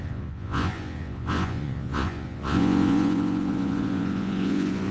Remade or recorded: remade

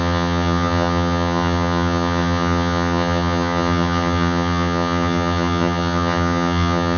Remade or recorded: remade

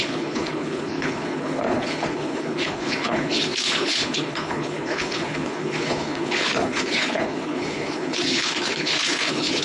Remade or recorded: remade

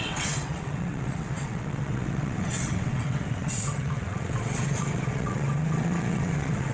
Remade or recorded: remade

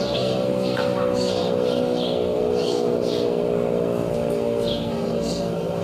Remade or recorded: remade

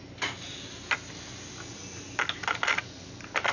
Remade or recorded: recorded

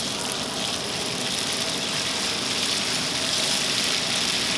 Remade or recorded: recorded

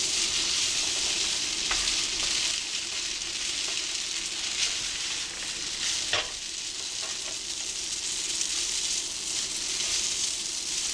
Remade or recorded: recorded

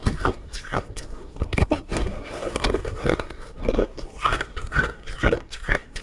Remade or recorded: remade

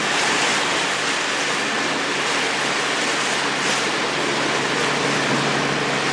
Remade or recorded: recorded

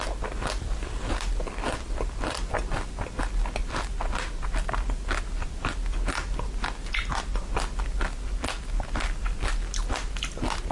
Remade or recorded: recorded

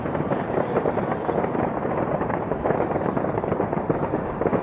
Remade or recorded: remade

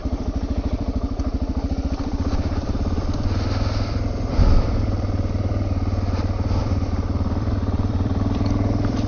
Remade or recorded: remade